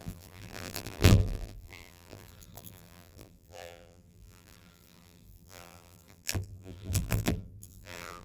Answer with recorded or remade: remade